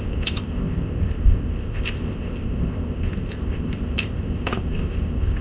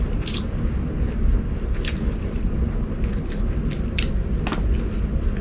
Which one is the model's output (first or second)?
first